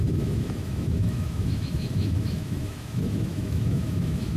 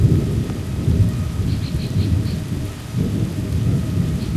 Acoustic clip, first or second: second